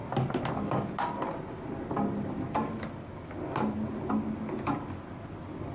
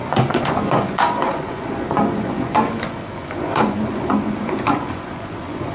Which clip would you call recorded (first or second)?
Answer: first